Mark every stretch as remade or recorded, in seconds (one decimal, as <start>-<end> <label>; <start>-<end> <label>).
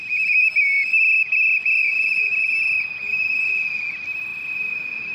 0.0-4.3 recorded; 4.3-5.1 remade